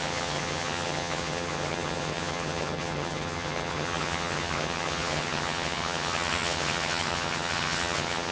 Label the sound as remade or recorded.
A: remade